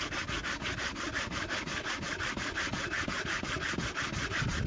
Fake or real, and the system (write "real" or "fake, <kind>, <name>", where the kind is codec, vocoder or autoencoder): real